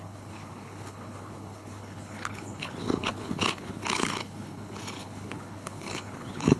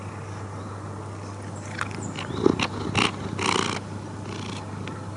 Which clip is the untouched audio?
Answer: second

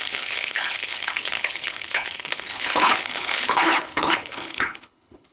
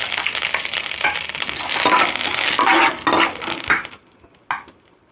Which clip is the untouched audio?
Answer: second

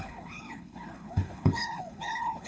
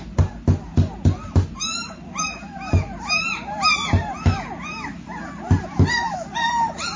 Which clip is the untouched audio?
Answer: second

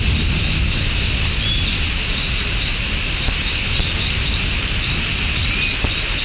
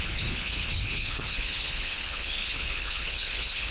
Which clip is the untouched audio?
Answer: first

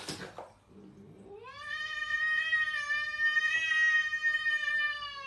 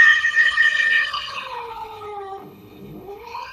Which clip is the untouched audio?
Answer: first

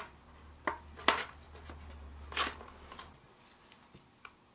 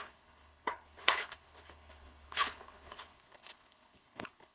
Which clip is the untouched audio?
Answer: first